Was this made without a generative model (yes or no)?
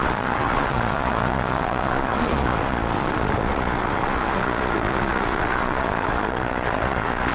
no